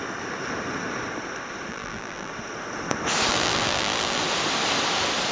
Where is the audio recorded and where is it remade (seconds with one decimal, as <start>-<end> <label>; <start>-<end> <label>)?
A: 0.0-1.7 recorded; 1.7-2.3 remade; 2.3-3.3 recorded; 3.3-4.2 remade; 4.2-5.3 recorded